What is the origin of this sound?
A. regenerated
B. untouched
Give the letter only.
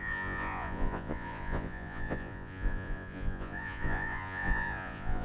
A